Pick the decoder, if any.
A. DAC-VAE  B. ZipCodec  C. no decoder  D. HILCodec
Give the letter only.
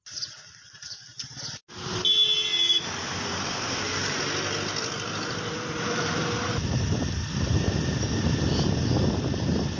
C